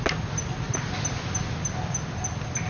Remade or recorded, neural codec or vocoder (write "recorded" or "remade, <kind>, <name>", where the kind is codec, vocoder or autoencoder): recorded